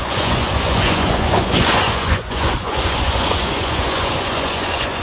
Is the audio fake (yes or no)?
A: yes